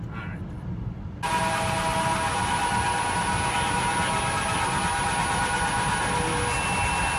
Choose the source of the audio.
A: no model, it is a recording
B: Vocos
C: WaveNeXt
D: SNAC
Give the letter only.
A